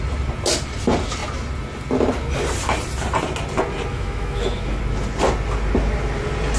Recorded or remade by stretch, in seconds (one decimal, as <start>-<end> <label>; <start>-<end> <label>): 0.0-3.9 recorded; 3.9-4.8 remade; 4.8-6.6 recorded